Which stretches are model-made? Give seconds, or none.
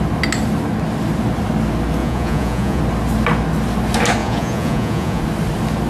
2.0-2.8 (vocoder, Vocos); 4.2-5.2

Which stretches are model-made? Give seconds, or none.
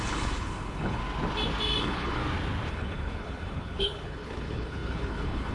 0.0-1.0 (codec, HILCodec); 1.8-2.2; 2.7-5.5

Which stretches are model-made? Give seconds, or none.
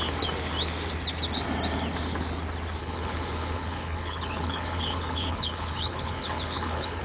2.8-7.0 (codec, HILCodec)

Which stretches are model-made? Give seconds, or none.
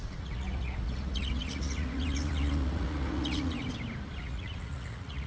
0.0-3.6 (vocoder, Vocos); 4.2-5.3